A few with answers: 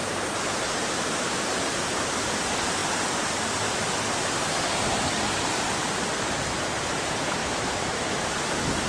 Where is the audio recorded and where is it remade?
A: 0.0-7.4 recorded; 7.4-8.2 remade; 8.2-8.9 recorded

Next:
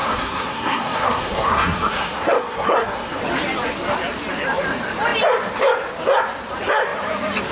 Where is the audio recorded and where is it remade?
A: 0.0-3.2 remade; 3.2-7.5 recorded